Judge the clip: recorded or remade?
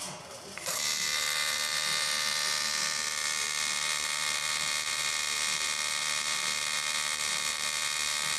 remade